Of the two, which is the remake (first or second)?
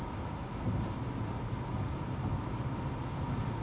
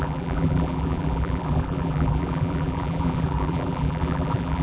second